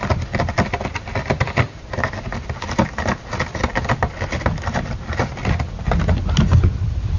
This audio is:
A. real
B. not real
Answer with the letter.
A